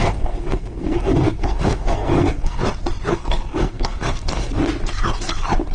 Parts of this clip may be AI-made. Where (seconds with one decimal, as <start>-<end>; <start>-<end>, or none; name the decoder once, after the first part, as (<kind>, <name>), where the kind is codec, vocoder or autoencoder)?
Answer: 0.0-2.6 (codec, SNAC); 3.1-4.5